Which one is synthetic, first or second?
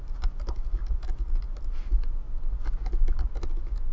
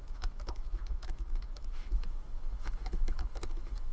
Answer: second